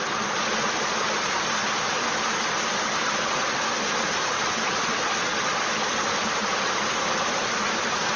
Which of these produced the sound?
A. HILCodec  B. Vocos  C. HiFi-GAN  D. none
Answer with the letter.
D